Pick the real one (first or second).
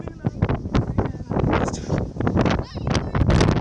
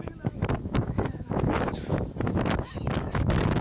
first